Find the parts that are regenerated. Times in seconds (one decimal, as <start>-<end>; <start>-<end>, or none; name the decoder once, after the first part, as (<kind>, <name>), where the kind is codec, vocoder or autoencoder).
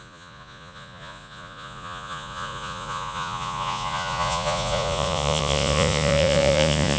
0.0-7.0 (vocoder, Vocos)